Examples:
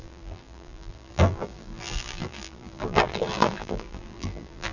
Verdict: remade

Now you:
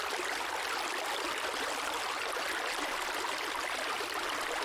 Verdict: recorded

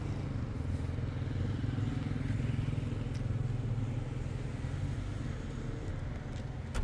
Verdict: recorded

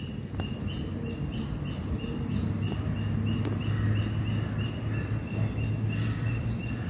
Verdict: recorded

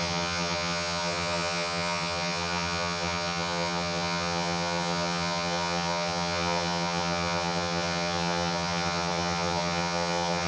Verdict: remade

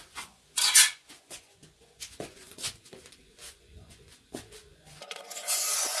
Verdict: remade